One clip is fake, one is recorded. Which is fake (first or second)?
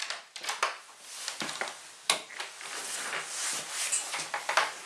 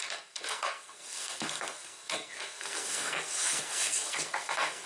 second